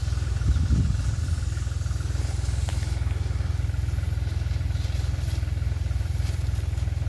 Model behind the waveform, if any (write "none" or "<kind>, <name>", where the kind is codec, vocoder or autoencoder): none